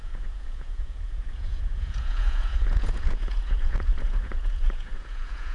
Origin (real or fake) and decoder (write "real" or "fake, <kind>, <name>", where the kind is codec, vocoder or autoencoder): fake, vocoder, Vocos